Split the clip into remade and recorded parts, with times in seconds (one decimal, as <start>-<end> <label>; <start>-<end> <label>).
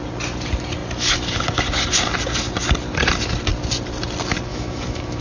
0.0-4.5 recorded; 4.5-5.2 remade